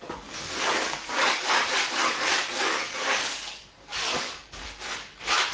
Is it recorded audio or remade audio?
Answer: remade